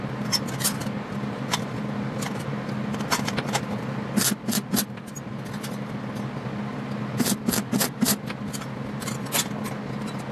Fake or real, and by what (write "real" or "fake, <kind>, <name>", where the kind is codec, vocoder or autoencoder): real